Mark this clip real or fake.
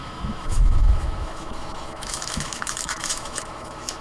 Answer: fake